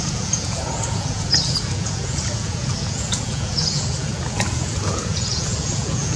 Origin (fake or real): fake